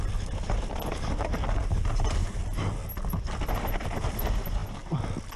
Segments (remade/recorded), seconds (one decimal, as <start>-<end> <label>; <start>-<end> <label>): 0.0-1.6 recorded; 1.6-2.4 remade; 2.4-5.4 recorded